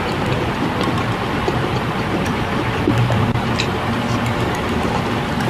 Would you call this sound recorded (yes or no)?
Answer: yes